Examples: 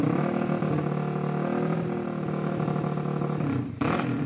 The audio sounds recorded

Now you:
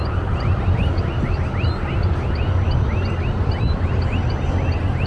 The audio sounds recorded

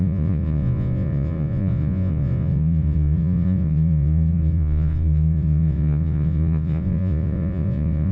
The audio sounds remade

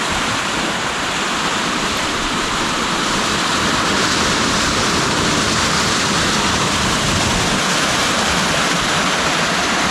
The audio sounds remade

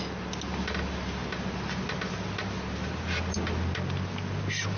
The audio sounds recorded